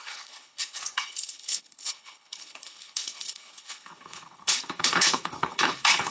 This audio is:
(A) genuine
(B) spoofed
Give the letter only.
B